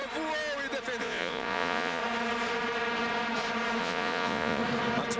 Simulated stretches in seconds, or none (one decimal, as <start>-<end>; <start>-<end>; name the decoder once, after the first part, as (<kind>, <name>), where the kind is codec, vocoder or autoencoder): 1.0-2.0 (vocoder, Vocos); 3.8-4.6

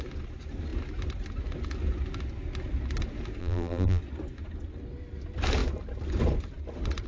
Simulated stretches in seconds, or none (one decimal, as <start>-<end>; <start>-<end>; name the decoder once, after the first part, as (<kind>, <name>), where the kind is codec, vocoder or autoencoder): 3.4-4.0 (vocoder, BigVGAN v2)

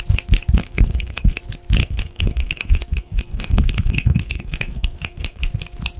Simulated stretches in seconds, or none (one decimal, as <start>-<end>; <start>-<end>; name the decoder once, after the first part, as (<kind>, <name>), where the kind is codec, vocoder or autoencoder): 0.6-1.4 (codec, SNAC); 1.8-5.4

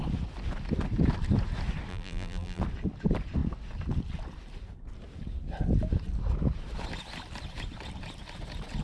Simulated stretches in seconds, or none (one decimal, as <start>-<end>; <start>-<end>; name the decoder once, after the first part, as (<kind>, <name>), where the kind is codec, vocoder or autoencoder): 1.9-2.6 (vocoder, BigVGAN v2)

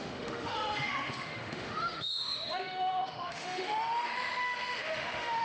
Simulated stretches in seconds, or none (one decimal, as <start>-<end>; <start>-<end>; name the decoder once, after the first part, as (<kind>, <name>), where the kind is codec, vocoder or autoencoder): 0.0-5.4 (autoencoder, DAC-VAE)

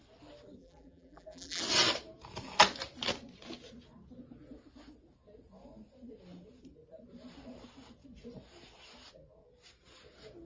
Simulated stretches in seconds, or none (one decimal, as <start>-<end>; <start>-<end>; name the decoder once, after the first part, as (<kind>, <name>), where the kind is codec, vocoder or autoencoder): 0.6-1.6 (vocoder, BigVGAN v2)